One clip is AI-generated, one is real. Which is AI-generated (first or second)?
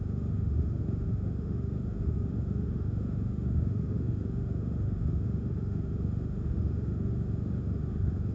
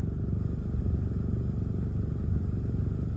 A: first